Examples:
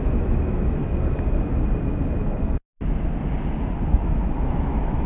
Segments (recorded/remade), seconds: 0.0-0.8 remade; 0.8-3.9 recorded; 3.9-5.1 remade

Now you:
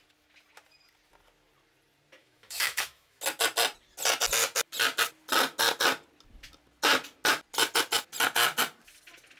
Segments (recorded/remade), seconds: 0.0-2.2 recorded; 2.2-3.2 remade; 3.2-9.4 recorded

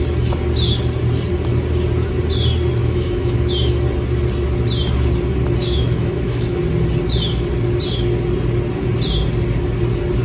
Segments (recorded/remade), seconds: 0.0-2.8 recorded; 2.8-3.5 remade; 3.5-5.6 recorded; 5.6-6.6 remade; 6.6-10.2 recorded

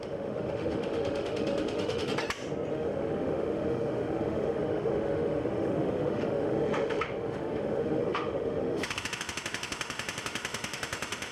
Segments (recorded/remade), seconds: 0.0-2.1 remade; 2.1-2.7 recorded; 2.7-11.3 remade